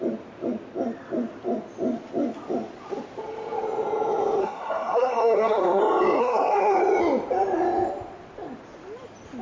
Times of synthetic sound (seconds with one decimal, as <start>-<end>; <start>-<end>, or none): 4.4-5.8; 6.2-6.8